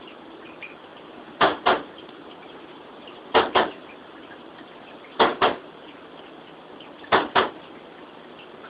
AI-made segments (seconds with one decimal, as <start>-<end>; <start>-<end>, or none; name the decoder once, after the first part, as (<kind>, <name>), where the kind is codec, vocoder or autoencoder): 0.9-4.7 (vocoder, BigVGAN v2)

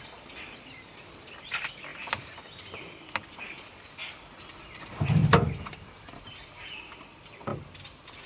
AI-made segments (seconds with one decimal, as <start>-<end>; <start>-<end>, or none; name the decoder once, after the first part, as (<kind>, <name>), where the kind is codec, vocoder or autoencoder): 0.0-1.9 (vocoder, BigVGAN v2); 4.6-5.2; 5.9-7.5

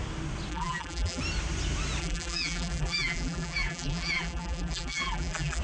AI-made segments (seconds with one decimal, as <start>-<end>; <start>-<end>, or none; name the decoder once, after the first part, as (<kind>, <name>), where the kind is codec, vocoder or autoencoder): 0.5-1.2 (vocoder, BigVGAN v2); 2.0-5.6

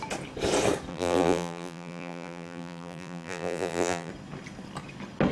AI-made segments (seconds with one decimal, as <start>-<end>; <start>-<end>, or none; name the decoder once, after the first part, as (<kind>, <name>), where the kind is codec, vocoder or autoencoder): 0.9-4.1 (vocoder, BigVGAN v2)